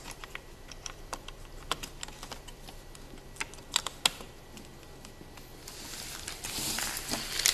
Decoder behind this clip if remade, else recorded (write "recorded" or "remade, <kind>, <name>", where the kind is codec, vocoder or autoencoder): recorded